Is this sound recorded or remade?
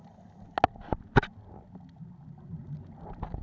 recorded